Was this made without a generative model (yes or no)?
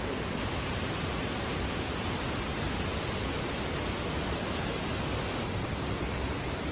yes